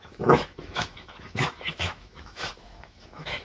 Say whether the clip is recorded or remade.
remade